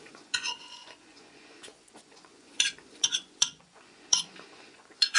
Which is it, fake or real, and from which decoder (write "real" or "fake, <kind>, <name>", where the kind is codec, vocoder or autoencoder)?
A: fake, vocoder, Vocos